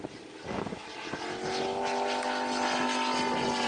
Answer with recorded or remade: recorded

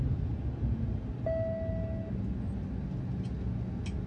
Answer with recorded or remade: recorded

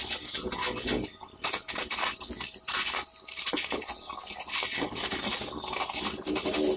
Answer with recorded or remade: recorded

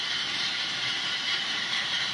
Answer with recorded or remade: remade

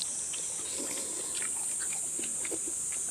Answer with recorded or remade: recorded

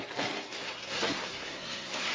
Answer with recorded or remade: remade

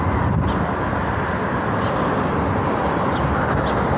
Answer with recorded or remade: recorded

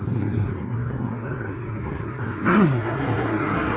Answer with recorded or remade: remade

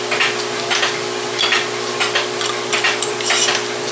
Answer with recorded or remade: recorded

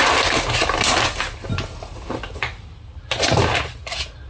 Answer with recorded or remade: recorded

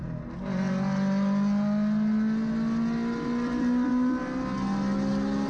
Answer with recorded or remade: recorded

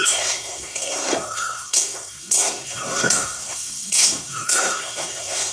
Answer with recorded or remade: remade